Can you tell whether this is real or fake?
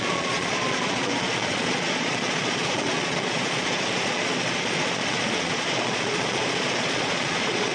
fake